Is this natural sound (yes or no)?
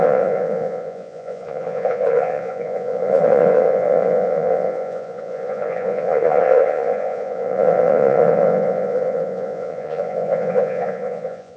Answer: no